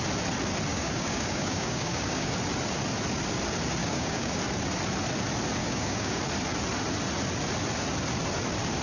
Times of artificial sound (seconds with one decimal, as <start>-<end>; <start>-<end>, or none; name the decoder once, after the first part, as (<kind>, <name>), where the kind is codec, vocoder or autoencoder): 0.7-2.3 (codec, DAC); 3.8-4.4; 5.6-6.2